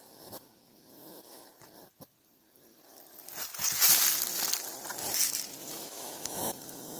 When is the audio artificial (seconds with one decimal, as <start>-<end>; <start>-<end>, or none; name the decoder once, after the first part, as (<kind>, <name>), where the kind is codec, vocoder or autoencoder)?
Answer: 0.0-1.5 (autoencoder, DAC-VAE); 5.7-7.0